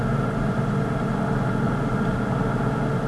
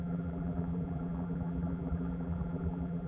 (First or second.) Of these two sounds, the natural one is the first